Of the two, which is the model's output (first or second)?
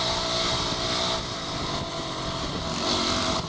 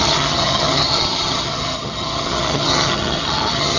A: second